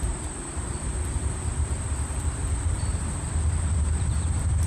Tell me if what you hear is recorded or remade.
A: remade